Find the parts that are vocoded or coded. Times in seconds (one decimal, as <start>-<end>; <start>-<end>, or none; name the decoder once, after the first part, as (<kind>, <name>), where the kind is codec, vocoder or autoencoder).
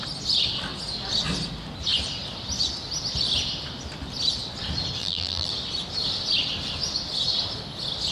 5.0-5.5 (vocoder, BigVGAN v2)